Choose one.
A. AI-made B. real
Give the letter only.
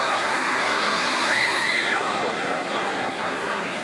A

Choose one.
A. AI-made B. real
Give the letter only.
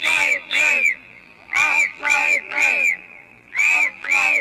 A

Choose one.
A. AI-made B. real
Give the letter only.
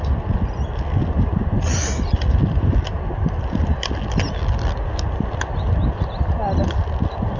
B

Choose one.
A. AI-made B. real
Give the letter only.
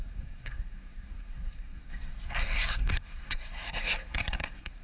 A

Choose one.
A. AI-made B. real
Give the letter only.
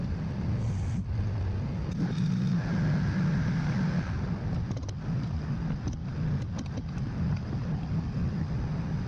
B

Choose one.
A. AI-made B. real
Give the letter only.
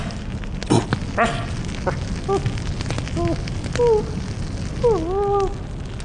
B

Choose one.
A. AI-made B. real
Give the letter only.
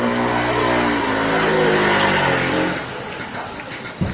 B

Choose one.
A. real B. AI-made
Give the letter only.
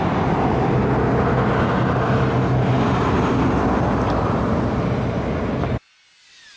A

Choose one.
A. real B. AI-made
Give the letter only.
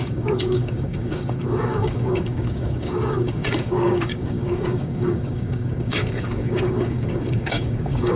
B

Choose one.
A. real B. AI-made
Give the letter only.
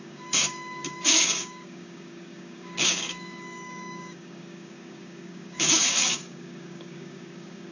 B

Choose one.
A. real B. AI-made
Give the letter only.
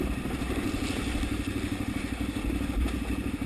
A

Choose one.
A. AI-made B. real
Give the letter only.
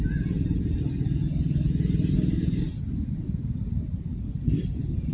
B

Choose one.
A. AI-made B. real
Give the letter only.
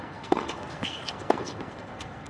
A